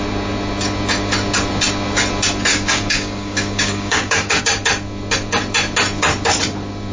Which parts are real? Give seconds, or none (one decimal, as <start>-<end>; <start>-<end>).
0.0-2.5; 4.4-6.9